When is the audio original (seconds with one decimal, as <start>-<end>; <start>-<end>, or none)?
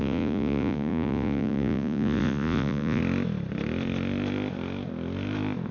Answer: 3.0-5.7